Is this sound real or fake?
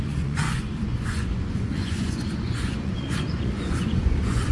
fake